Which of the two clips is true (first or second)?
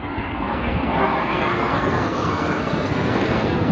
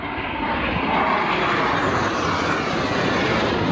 second